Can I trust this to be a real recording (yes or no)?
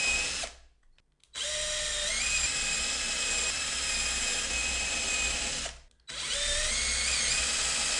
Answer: yes